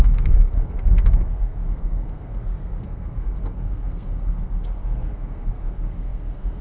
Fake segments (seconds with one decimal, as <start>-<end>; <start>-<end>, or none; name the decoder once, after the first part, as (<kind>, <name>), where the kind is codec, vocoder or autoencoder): 0.0-6.6 (codec, SNAC)